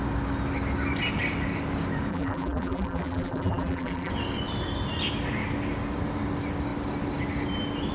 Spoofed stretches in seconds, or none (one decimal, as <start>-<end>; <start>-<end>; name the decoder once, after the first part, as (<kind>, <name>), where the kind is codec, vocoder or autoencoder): 2.1-4.1 (vocoder, BigVGAN v2)